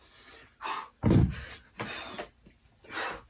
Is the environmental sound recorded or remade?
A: recorded